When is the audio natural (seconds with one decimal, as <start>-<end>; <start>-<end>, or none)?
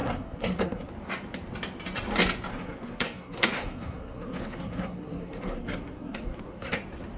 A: 0.9-2.5; 6.8-7.2